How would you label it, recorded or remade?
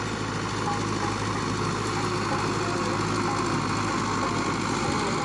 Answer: recorded